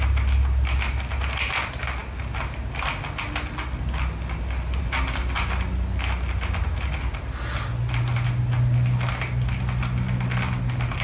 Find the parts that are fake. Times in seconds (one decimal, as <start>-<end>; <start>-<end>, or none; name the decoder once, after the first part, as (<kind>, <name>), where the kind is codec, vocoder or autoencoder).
none